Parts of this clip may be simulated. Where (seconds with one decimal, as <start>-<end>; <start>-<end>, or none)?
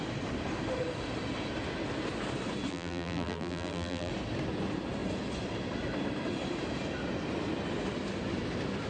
2.7-4.1